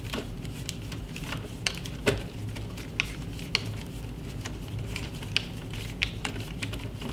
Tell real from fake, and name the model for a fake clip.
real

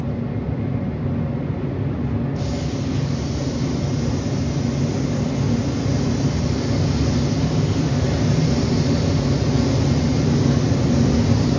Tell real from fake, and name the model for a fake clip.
real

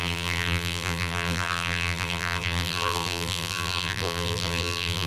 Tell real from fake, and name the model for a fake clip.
fake, vocoder, BigVGAN v2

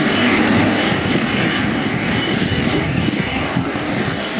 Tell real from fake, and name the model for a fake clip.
fake, codec, DAC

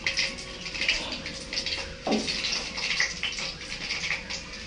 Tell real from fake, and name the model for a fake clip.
real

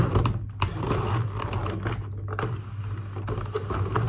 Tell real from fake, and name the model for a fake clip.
real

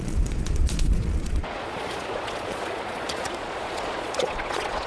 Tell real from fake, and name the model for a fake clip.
fake, vocoder, Vocos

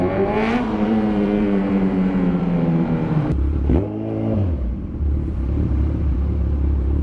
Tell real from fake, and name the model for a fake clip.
fake, vocoder, BigVGAN v2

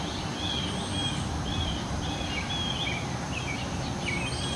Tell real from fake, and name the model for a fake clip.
real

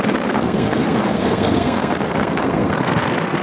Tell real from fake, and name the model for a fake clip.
fake, codec, SNAC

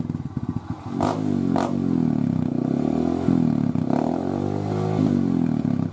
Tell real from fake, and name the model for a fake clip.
real